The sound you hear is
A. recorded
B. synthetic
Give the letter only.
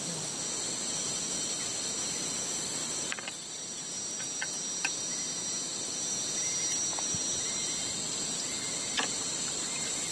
A